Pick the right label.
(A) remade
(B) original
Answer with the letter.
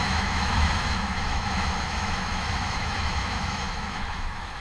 A